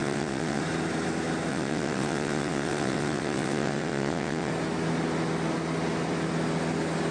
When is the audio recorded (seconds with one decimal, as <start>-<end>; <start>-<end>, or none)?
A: 0.6-1.5; 4.5-7.1